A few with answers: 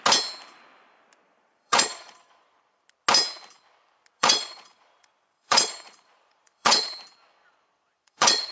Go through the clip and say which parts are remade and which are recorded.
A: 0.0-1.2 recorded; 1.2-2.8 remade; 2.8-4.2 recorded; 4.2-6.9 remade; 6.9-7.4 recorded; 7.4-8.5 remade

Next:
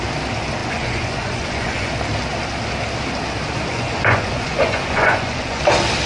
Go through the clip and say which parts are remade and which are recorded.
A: 0.0-0.6 recorded; 0.6-1.9 remade; 1.9-3.7 recorded; 3.7-5.6 remade; 5.6-6.1 recorded

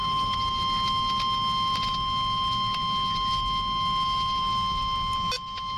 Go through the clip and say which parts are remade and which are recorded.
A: 0.0-5.8 recorded

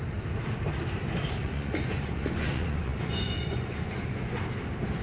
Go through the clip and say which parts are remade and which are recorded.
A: 0.0-1.4 recorded; 1.4-4.4 remade; 4.4-5.0 recorded

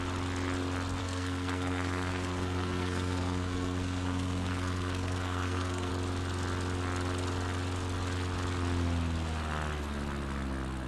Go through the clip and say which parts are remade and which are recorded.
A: 0.0-1.0 recorded; 1.0-5.9 remade; 5.9-10.9 recorded

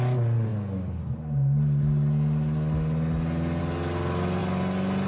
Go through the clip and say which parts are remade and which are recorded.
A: 0.0-5.1 recorded

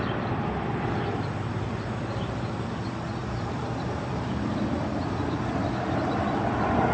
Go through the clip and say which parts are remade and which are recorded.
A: 0.0-3.2 recorded; 3.2-5.7 remade; 5.7-6.9 recorded